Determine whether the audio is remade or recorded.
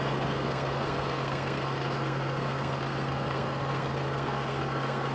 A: remade